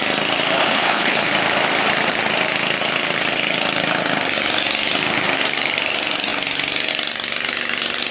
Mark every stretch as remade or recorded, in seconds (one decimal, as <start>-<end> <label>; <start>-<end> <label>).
0.0-0.6 recorded; 0.6-1.3 remade; 1.3-8.1 recorded